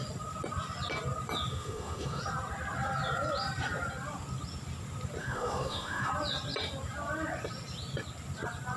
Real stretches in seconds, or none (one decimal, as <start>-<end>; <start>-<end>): 0.0-1.5; 2.2-5.2; 6.1-8.8